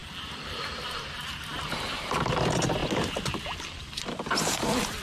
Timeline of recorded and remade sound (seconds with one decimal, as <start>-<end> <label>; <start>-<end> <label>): 0.0-0.7 recorded; 0.7-2.8 remade; 2.8-3.8 recorded; 3.8-5.0 remade